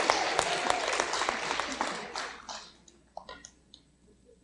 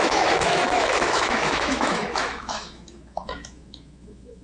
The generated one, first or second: second